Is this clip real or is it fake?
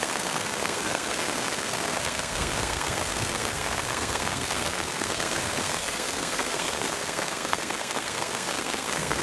fake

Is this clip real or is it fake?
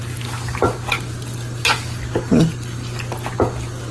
real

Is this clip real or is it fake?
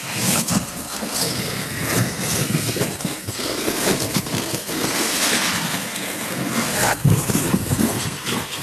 fake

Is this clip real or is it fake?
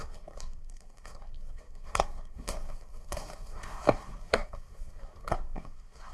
fake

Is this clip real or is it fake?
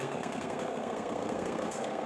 fake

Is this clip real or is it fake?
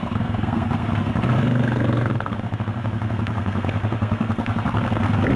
fake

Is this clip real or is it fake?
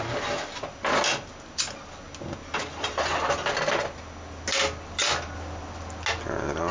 real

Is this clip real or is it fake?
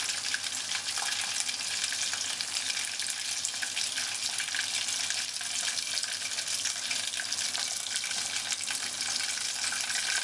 real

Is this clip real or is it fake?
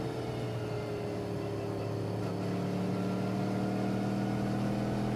real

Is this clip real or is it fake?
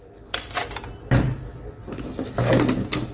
real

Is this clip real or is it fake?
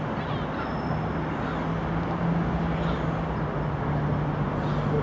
real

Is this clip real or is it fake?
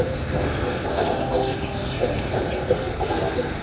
fake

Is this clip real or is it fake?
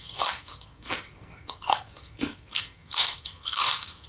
fake